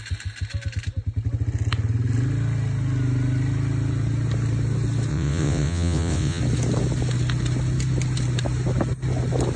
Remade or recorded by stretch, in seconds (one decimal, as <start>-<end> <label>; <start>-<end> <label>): 0.0-5.1 recorded; 5.1-6.4 remade; 6.4-9.6 recorded